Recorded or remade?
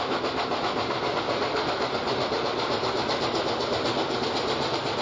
recorded